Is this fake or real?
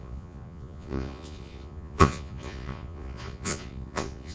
fake